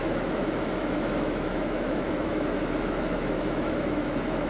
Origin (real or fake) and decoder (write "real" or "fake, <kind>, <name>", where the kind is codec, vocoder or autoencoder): fake, autoencoder, DAC-VAE